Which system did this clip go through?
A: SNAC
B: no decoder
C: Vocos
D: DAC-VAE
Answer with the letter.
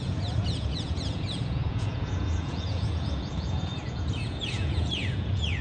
C